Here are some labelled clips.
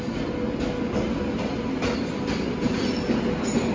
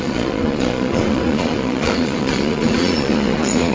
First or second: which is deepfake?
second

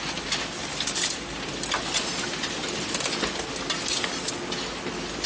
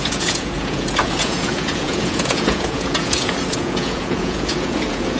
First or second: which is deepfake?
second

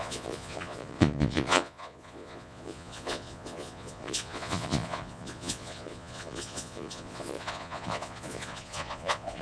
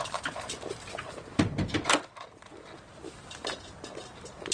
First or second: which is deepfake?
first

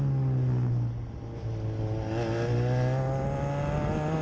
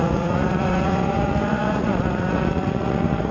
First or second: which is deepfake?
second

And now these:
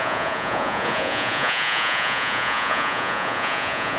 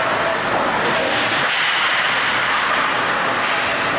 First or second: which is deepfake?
first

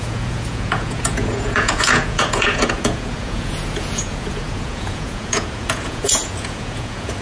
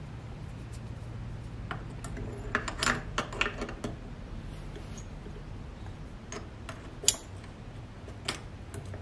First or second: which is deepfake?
first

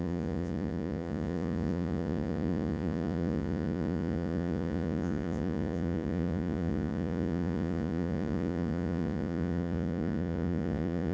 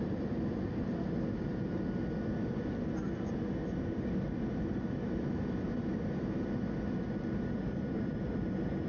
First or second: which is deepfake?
first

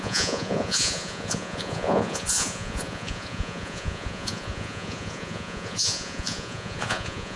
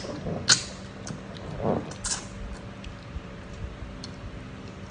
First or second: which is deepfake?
first